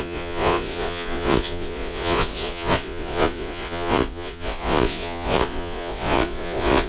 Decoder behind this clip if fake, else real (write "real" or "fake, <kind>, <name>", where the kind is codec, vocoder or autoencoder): fake, vocoder, Vocos